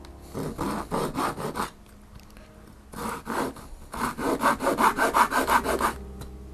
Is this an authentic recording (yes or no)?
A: yes